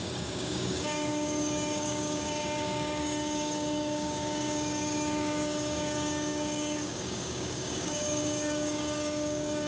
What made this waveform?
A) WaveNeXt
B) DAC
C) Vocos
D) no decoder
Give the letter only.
B